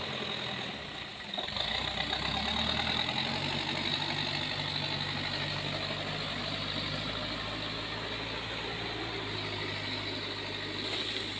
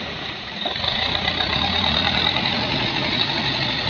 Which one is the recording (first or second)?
first